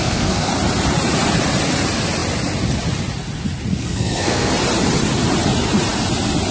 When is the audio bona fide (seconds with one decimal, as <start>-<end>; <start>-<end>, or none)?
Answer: 0.5-3.7; 4.5-6.5

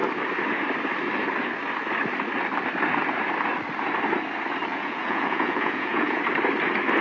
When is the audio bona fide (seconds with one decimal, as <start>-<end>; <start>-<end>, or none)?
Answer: 0.0-4.7; 6.2-7.0

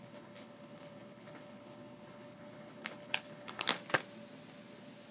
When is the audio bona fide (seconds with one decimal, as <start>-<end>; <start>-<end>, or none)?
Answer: 3.7-5.1

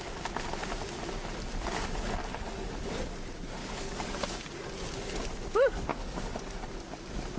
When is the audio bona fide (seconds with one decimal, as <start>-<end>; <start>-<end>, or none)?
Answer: 0.0-2.2; 2.8-3.6; 4.2-5.9; 6.7-7.4